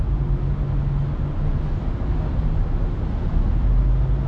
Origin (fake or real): real